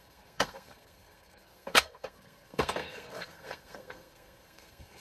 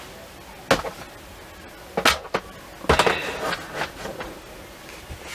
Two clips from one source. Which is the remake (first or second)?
first